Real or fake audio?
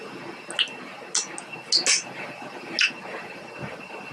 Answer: real